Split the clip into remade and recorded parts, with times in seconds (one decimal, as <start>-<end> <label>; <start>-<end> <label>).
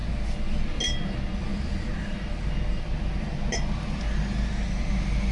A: 0.0-1.5 recorded; 1.5-2.5 remade; 2.5-5.3 recorded